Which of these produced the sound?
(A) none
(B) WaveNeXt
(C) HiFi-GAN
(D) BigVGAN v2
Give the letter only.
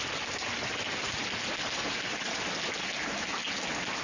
A